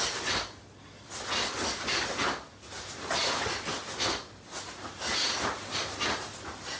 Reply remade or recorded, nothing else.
recorded